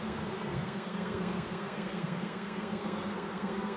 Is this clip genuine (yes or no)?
no